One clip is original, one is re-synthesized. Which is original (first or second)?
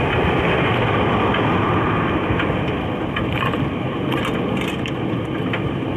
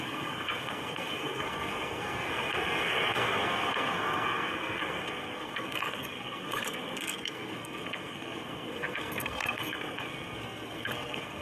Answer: first